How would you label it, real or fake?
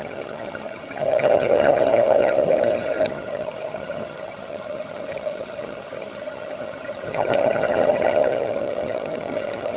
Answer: fake